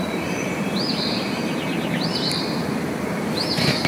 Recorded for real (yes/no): no